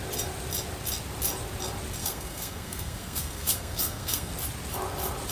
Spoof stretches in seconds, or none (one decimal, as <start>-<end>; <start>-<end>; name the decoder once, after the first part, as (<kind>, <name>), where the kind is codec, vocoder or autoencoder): 2.0-4.3 (codec, SNAC)